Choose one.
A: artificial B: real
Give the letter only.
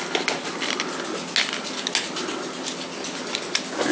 B